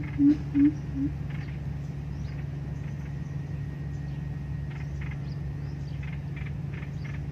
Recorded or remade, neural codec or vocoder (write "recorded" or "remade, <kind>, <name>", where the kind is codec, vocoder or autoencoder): recorded